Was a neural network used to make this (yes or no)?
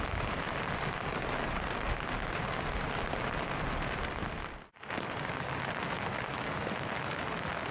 no